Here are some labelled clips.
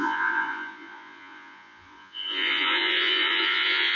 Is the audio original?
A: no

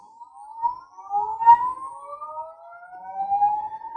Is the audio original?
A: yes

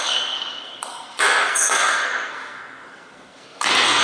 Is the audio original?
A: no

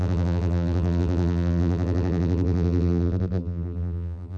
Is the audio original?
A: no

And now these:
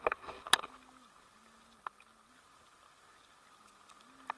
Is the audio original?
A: yes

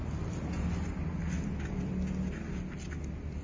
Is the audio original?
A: yes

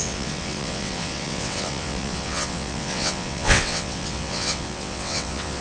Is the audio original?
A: no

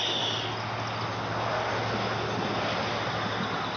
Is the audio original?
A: yes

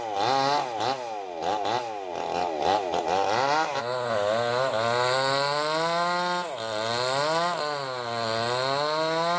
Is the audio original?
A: yes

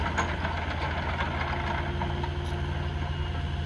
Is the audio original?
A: yes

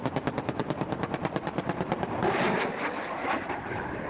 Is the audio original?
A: no